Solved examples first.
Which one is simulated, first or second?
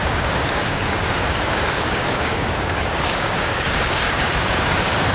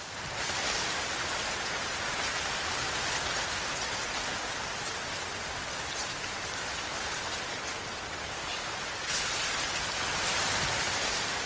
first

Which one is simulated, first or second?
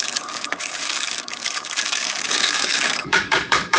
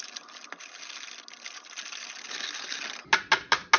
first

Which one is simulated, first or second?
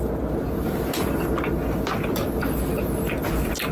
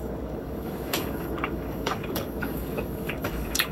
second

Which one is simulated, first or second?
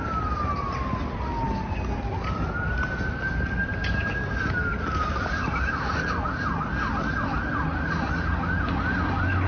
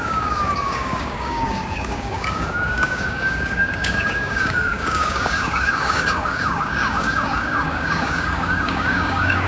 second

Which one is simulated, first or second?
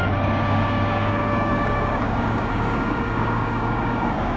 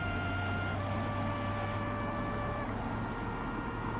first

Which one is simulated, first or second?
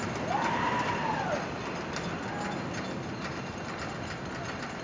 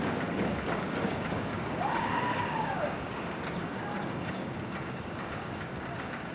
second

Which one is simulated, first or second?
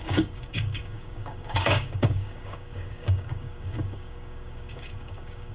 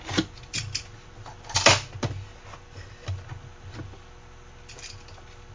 first